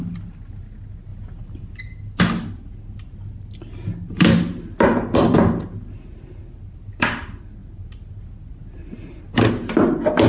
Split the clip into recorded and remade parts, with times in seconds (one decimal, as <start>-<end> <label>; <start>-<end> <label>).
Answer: 0.0-10.3 recorded